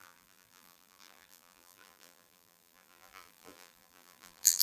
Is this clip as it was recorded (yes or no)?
no